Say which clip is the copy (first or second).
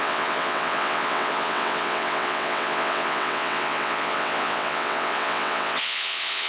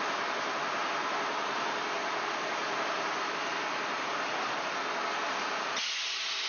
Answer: first